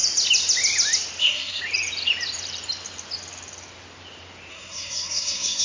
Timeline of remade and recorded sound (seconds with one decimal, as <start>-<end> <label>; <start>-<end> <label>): 0.0-1.2 recorded; 1.2-1.6 remade; 1.6-4.5 recorded; 4.5-5.6 remade